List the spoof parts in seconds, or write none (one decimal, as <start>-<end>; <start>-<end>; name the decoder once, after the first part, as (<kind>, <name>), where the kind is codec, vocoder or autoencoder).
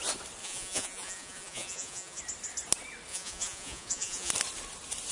0.4-2.2 (vocoder, Vocos); 3.1-4.3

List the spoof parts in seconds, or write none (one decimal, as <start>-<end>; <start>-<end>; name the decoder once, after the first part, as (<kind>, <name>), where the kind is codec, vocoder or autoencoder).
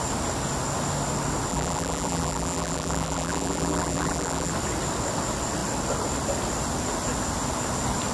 1.5-4.5 (vocoder, BigVGAN v2)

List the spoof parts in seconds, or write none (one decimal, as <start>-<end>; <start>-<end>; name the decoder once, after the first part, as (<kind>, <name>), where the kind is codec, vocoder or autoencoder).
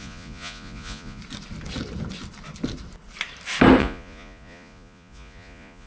0.0-1.2 (vocoder, Vocos); 3.8-5.9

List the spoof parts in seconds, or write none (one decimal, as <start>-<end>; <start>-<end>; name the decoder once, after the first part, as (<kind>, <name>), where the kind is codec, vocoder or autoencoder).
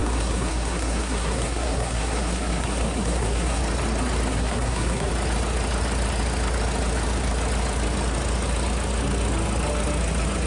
0.0-3.6 (codec, SNAC); 4.3-5.1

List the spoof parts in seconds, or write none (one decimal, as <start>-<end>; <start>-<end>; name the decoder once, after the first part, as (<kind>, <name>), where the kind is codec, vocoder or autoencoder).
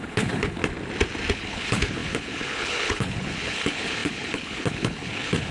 0.0-0.6 (codec, HILCodec); 1.3-5.5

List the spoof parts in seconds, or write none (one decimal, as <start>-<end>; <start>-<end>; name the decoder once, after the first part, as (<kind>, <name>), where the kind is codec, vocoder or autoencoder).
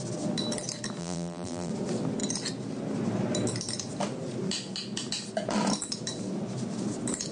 1.0-1.7 (vocoder, BigVGAN v2)